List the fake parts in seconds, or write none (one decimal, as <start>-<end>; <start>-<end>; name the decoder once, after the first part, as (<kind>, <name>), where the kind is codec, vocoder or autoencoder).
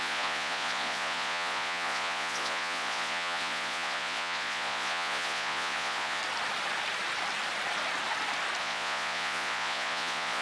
0.0-6.2 (vocoder, Vocos); 8.6-10.4